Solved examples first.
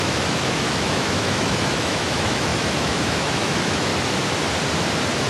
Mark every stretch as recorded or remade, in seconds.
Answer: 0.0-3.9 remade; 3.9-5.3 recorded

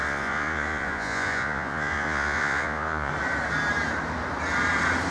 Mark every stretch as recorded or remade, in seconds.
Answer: 0.0-3.1 remade; 3.1-5.1 recorded

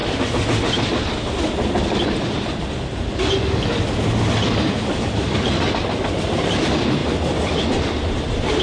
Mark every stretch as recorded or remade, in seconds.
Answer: 0.0-4.7 recorded; 4.7-8.6 remade

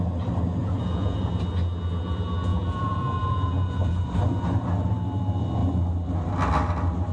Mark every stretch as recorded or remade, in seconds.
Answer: 0.0-0.6 recorded; 0.6-1.3 remade; 1.3-2.5 recorded; 2.5-4.0 remade; 4.0-7.1 recorded

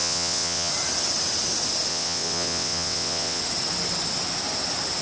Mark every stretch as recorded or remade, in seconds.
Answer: 0.0-0.7 remade; 0.7-1.9 recorded; 1.9-3.4 remade; 3.4-5.0 recorded

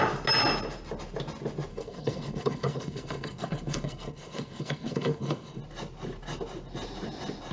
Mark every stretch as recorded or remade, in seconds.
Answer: 0.0-1.7 recorded; 1.7-5.6 remade; 5.6-7.5 recorded

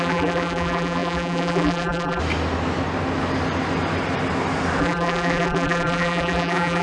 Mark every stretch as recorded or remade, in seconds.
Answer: 0.0-2.2 remade; 2.2-4.8 recorded; 4.8-6.8 remade